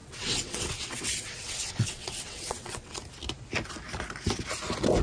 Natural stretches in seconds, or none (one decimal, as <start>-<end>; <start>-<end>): 3.0-5.0